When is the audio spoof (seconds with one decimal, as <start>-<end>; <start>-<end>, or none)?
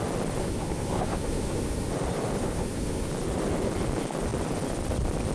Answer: 0.4-1.9; 2.4-3.1